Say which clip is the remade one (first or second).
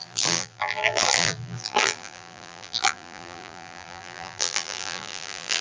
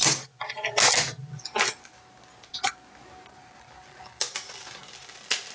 first